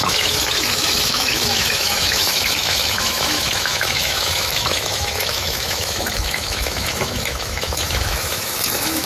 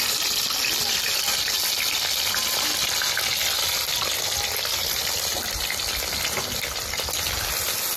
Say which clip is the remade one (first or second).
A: first